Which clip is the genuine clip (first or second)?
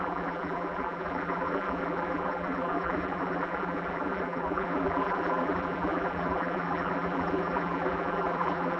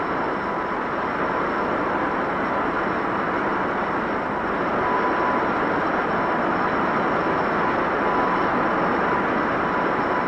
second